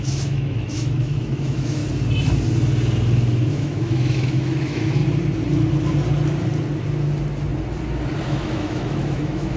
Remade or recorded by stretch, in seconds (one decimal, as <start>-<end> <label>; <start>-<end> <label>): 0.0-1.8 remade; 1.8-3.5 recorded; 3.5-5.0 remade; 5.0-8.2 recorded; 8.2-9.6 remade